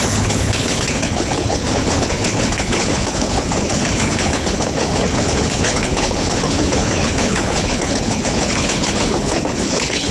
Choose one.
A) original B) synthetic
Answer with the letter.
B